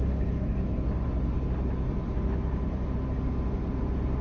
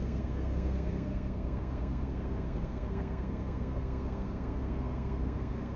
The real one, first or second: first